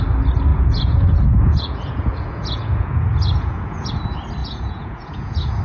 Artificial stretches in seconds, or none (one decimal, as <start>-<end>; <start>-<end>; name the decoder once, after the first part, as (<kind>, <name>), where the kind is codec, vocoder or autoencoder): 0.5-3.9 (vocoder, Vocos); 4.4-5.6